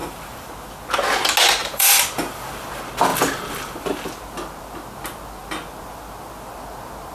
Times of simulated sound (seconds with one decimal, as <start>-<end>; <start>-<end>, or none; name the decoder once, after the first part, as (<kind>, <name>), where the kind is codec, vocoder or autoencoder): 0.0-0.5 (vocoder, BigVGAN v2); 1.6-2.7; 3.1-4.1